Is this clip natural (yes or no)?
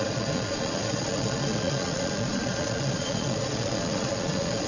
no